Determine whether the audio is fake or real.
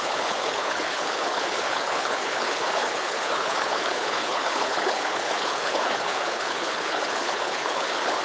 fake